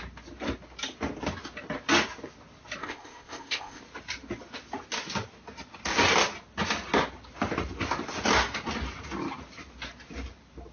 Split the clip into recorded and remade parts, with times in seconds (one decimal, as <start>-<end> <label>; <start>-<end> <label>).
0.0-2.8 recorded; 2.8-3.8 remade; 3.8-10.7 recorded